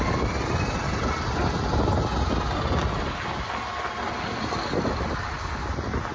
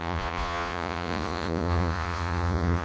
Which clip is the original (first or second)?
first